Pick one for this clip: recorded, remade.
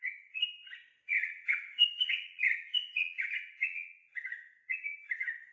remade